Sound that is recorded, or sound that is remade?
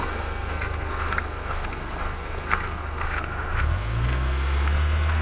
remade